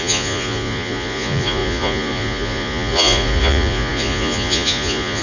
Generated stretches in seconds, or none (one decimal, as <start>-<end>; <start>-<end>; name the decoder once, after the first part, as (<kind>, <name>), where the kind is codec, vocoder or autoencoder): 0.0-5.2 (vocoder, Vocos)